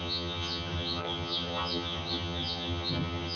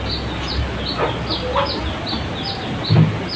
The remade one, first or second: first